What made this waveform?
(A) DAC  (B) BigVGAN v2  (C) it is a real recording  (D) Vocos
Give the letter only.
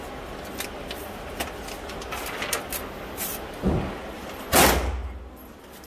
C